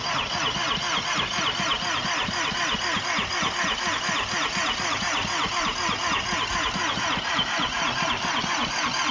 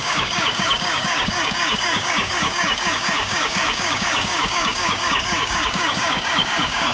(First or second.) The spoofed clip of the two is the second